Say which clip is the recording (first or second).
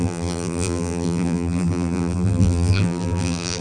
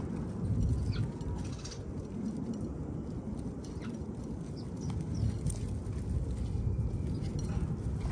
second